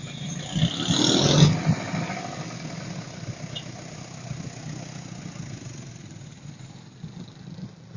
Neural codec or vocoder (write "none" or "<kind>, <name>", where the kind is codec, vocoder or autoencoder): none